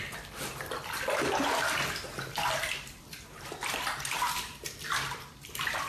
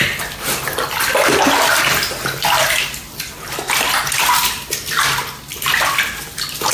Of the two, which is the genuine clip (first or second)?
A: second